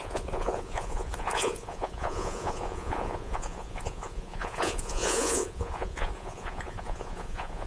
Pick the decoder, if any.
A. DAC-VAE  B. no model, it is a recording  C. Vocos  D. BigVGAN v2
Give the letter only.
C